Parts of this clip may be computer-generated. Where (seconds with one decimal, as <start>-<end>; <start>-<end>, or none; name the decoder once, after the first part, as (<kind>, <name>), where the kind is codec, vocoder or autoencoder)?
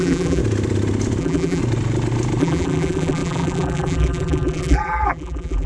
0.0-0.4 (vocoder, BigVGAN v2); 1.2-1.6; 2.4-5.7